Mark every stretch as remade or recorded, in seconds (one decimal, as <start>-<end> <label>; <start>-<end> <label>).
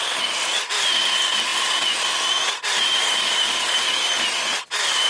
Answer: 0.0-5.1 recorded